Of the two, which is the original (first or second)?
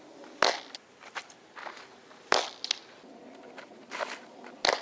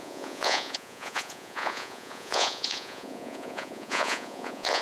first